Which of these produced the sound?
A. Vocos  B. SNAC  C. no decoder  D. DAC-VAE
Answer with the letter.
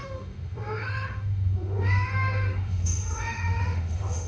D